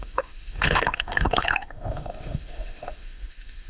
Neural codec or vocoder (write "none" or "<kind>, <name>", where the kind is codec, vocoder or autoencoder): autoencoder, DAC-VAE